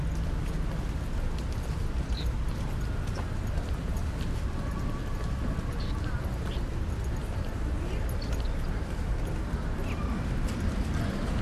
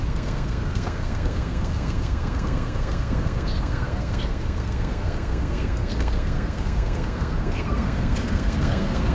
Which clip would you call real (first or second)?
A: first